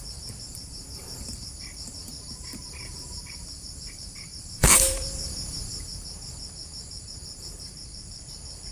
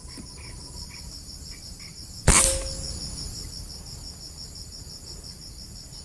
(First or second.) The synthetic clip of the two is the first